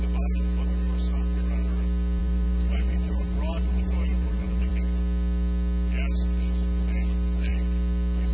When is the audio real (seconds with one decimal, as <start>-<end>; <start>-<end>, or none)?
0.0-2.2; 4.7-8.3